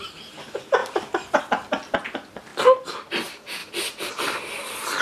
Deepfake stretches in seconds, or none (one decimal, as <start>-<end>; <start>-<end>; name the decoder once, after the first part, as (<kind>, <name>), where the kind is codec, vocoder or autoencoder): 0.8-1.4 (vocoder, BigVGAN v2)